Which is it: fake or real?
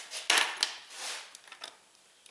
real